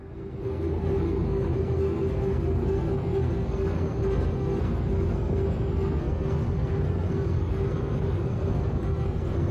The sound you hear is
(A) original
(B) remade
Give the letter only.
B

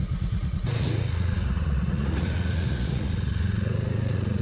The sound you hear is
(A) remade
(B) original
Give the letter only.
A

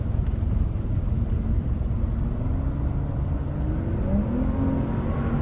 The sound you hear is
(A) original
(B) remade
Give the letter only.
A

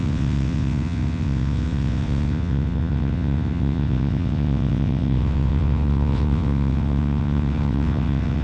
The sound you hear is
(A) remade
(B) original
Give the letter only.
A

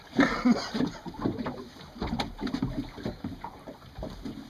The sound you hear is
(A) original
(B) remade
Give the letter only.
A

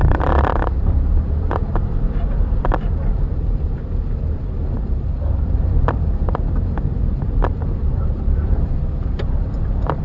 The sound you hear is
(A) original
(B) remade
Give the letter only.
B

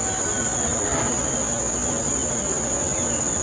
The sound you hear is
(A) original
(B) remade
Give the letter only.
A